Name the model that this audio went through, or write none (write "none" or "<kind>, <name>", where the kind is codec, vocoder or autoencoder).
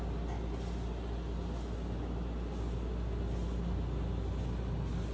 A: none